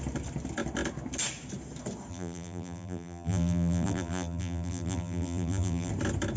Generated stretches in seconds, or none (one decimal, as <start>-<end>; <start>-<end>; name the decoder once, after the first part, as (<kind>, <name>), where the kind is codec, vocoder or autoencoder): 2.1-5.9 (vocoder, BigVGAN v2)